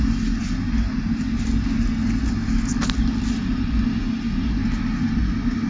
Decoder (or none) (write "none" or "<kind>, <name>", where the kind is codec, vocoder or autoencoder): none